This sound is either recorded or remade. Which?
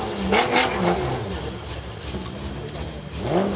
recorded